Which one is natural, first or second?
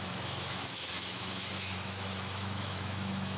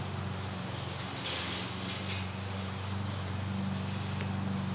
second